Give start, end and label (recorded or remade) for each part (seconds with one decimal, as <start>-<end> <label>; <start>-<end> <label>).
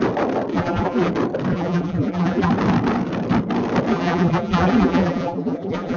0.0-0.5 recorded; 0.5-1.1 remade; 1.1-1.5 recorded; 1.5-2.5 remade; 2.5-3.9 recorded; 3.9-6.0 remade